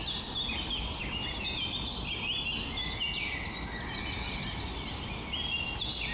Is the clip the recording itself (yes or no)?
yes